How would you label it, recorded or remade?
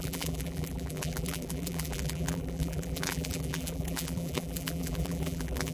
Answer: remade